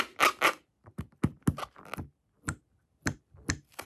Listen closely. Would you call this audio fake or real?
real